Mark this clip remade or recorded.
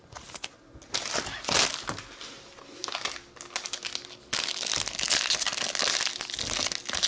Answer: recorded